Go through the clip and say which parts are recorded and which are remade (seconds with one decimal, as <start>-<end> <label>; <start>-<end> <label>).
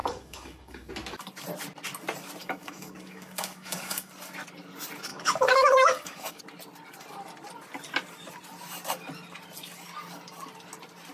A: 0.0-0.9 remade; 0.9-2.4 recorded; 2.4-4.1 remade; 4.1-5.1 recorded; 5.1-6.4 remade; 6.4-11.1 recorded